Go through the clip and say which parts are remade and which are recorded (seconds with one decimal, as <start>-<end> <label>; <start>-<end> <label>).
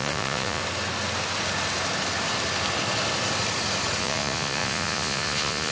0.0-0.6 remade; 0.6-4.0 recorded; 4.0-5.7 remade